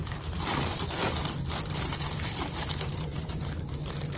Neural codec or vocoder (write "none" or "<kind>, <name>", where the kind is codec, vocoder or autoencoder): vocoder, BigVGAN v2